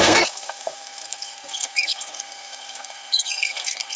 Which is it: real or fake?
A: fake